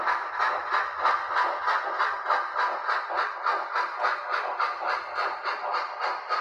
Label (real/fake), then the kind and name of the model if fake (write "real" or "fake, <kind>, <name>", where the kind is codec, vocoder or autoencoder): real